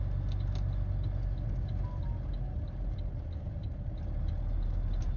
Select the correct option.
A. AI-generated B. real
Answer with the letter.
B